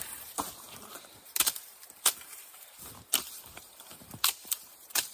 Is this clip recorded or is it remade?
remade